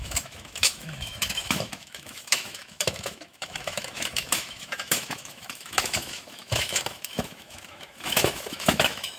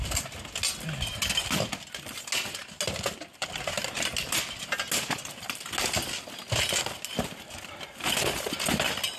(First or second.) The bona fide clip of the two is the second